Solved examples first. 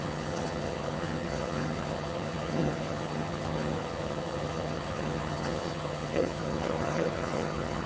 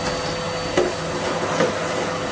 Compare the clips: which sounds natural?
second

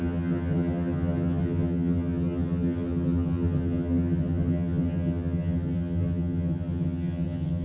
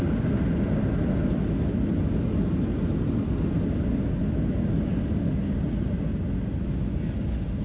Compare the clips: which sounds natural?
second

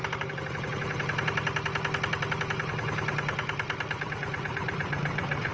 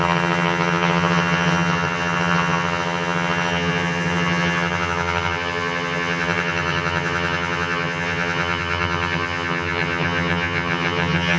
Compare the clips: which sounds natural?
first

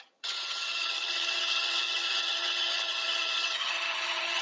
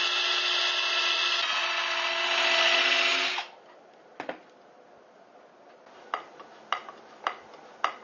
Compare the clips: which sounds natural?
second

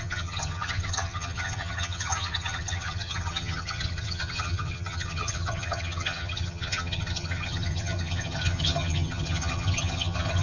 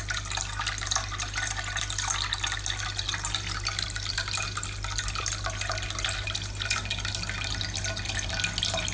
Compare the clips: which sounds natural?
second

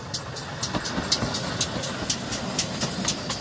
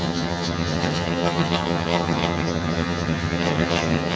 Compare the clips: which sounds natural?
first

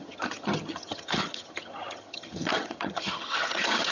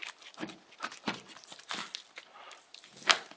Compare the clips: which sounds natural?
second